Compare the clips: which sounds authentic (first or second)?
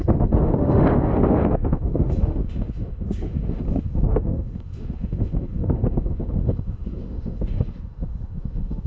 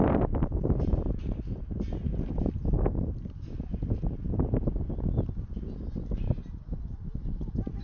second